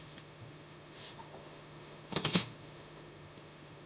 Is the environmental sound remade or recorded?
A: remade